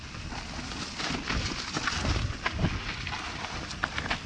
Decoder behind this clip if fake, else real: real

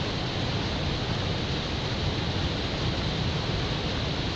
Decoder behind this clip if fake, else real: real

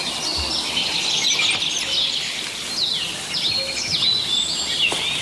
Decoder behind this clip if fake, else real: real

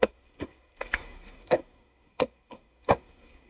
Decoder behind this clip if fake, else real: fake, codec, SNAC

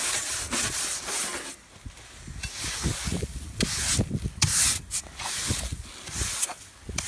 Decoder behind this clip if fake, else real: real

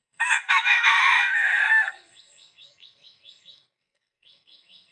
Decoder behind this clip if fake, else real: fake, codec, SNAC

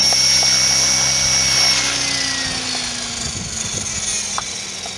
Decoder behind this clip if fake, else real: real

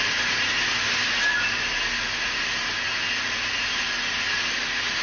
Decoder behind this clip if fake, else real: real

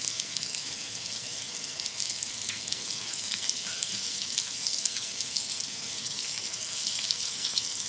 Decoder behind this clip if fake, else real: fake, codec, SNAC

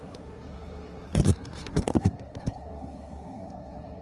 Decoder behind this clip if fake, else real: fake, codec, SNAC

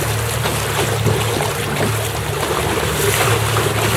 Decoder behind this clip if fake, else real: real